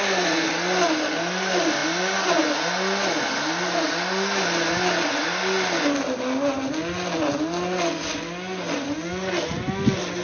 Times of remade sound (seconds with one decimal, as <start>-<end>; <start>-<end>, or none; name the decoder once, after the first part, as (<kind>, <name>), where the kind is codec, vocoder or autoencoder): none